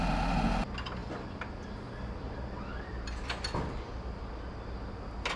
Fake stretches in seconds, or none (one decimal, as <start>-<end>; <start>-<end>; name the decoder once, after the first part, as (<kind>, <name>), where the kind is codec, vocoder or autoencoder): 1.0-4.2 (vocoder, BigVGAN v2)